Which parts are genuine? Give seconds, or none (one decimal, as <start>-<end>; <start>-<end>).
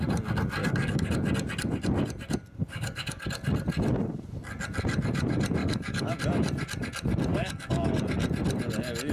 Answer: 0.0-0.6; 1.1-2.6; 3.2-5.6; 6.2-7.3; 7.9-9.1